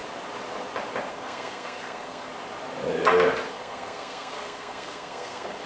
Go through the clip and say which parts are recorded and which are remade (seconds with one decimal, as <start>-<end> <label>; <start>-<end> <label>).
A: 0.0-1.1 recorded; 1.1-2.3 remade; 2.3-3.5 recorded; 3.5-5.7 remade